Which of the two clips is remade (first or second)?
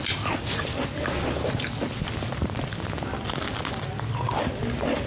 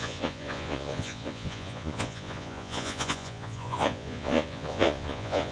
second